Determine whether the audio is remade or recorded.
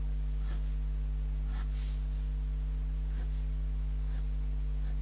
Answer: recorded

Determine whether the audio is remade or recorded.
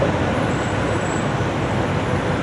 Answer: recorded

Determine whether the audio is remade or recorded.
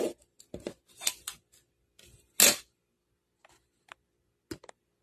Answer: recorded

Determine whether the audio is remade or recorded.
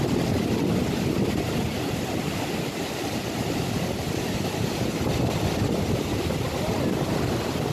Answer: recorded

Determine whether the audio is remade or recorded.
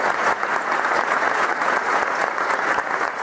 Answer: remade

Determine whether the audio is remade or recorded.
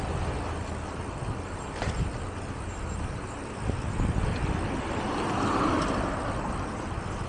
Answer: recorded